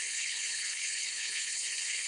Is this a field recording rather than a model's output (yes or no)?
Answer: no